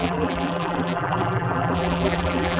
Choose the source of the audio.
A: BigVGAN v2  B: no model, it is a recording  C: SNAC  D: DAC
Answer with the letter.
A